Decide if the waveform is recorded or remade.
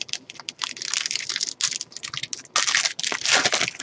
recorded